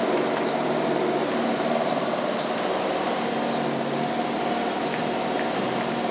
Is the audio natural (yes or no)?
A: no